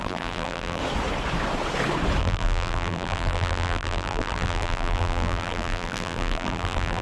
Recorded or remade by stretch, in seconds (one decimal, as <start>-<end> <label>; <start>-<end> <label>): 0.0-0.8 remade; 0.8-2.2 recorded; 2.2-7.0 remade